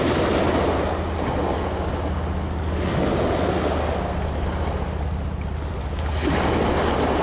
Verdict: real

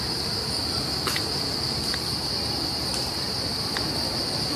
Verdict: real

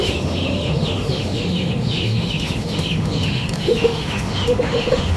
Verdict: fake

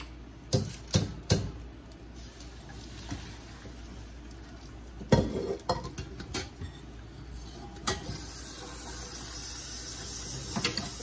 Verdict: real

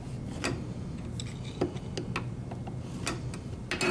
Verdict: real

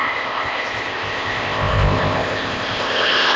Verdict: fake